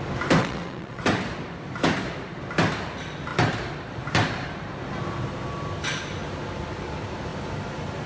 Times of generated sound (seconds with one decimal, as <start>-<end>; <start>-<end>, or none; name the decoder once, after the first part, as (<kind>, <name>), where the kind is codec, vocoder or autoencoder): 0.4-1.0 (vocoder, WaveNeXt)